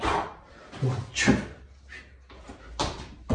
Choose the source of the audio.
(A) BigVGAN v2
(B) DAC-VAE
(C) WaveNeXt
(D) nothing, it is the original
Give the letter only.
D